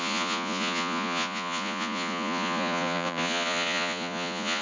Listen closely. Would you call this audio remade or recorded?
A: remade